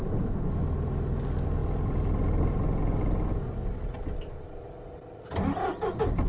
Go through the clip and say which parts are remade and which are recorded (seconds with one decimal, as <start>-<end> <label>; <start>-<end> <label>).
0.0-6.3 recorded